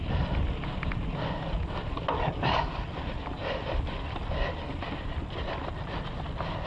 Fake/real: real